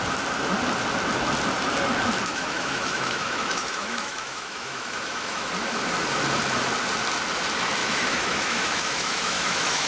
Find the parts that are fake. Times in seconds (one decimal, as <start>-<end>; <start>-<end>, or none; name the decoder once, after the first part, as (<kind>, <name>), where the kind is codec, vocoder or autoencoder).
2.3-5.5 (autoencoder, DAC-VAE); 7.8-9.9